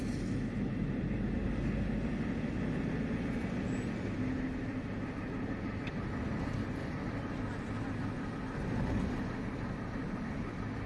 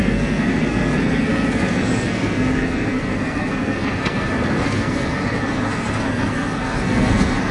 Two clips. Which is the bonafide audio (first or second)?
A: first